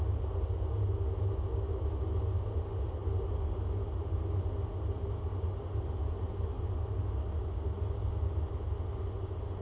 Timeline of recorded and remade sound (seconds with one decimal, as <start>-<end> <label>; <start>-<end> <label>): 0.0-9.6 recorded

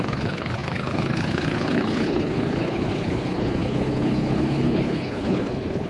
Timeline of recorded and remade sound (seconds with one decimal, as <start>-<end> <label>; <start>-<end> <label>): 0.0-5.9 remade